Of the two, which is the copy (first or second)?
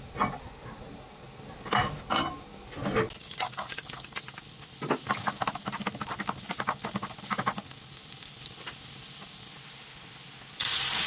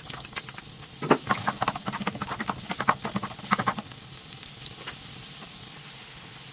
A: second